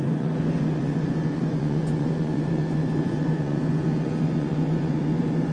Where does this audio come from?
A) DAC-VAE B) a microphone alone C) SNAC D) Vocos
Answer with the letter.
D